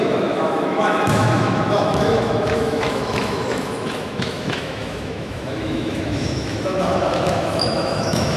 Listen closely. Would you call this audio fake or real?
fake